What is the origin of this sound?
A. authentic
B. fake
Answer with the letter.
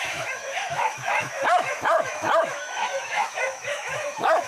B